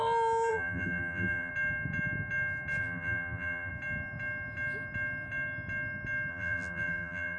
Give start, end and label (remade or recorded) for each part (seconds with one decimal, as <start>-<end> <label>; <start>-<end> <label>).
0.0-0.5 recorded; 0.5-1.5 remade; 1.5-2.8 recorded; 2.8-3.7 remade; 3.7-6.3 recorded; 6.3-7.4 remade